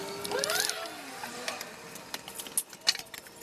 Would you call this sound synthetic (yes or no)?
no